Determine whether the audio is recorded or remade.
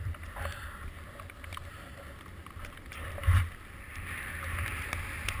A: remade